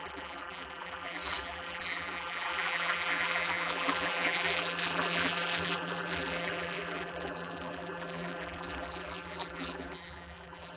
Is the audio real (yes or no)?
no